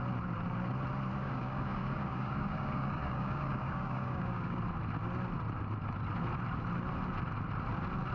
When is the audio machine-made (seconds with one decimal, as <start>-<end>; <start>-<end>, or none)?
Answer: 1.2-4.6